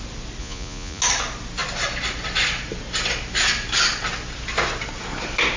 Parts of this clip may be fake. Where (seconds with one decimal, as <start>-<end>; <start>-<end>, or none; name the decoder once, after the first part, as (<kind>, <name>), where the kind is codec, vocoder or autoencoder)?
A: 0.4-1.0 (vocoder, Vocos)